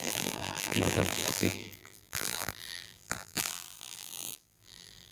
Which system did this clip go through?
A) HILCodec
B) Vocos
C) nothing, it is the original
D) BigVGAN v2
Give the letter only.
D